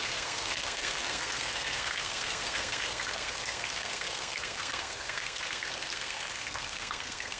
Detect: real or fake fake